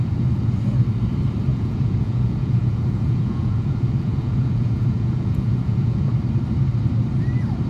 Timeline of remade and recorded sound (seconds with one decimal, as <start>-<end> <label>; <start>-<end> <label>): 0.0-1.5 recorded; 1.5-6.1 remade; 6.1-7.7 recorded